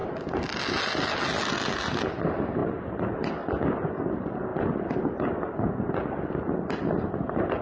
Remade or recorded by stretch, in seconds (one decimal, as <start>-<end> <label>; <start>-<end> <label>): 0.0-7.6 recorded